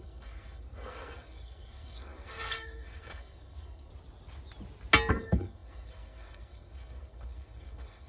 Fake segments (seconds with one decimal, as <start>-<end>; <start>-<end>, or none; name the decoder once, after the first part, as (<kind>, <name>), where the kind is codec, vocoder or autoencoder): 0.0-3.9 (codec, SNAC); 5.1-8.1